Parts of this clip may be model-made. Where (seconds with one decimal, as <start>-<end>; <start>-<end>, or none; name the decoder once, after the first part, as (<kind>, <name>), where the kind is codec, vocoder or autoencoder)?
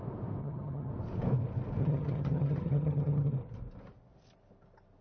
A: 0.4-0.9 (vocoder, HiFi-GAN); 1.8-3.3